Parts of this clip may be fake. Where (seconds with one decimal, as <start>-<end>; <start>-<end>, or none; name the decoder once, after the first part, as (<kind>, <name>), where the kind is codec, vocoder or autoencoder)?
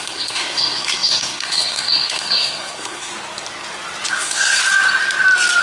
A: 0.0-3.1 (codec, SNAC); 4.1-4.6